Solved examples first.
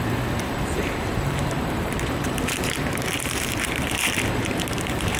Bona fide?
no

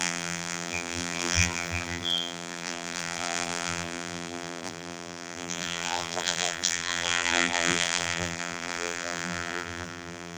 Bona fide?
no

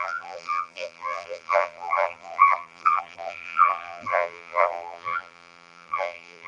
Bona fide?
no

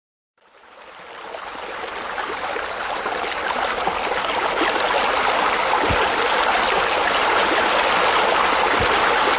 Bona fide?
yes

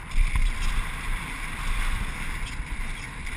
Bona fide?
yes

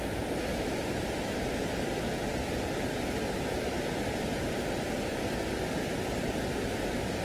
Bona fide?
yes